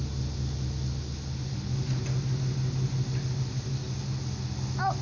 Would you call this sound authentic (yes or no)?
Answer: yes